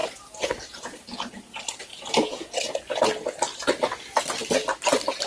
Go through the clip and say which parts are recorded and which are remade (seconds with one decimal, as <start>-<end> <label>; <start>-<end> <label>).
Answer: 0.0-0.9 remade; 0.9-1.9 recorded; 1.9-3.0 remade; 3.0-5.3 recorded

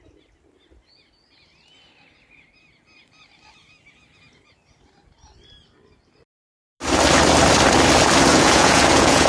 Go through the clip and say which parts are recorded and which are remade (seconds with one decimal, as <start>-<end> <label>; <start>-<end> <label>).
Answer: 0.0-8.3 recorded; 8.3-9.3 remade